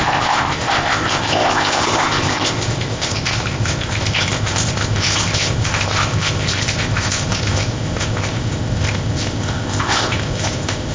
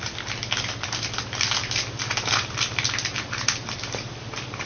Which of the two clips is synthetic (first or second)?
first